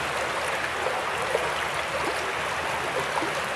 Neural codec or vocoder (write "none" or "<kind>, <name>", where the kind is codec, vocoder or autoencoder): none